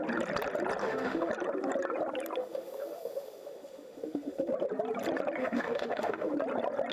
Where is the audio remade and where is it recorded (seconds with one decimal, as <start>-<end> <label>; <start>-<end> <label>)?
0.0-0.8 recorded; 0.8-1.3 remade; 1.3-2.4 recorded; 2.4-4.5 remade; 4.5-5.4 recorded; 5.4-6.3 remade; 6.3-6.9 recorded